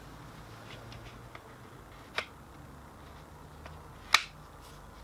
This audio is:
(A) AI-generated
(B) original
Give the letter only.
B